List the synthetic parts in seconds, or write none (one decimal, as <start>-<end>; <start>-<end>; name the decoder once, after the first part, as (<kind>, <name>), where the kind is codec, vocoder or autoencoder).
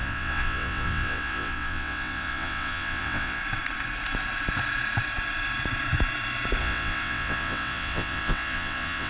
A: 0.0-3.4 (vocoder, WaveNeXt); 6.6-9.1